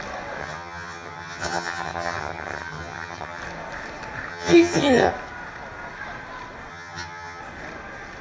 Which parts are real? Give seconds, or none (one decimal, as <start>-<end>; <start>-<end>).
0.0-0.4; 3.4-4.3; 5.1-6.7; 7.4-8.2